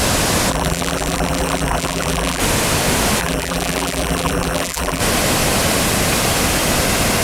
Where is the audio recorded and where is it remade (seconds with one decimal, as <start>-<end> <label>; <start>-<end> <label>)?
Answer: 0.0-0.5 recorded; 0.5-2.4 remade; 2.4-3.2 recorded; 3.2-5.0 remade; 5.0-7.2 recorded